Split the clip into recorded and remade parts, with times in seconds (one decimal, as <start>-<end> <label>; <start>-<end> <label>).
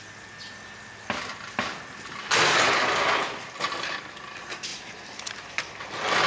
0.0-4.7 recorded; 4.7-6.3 remade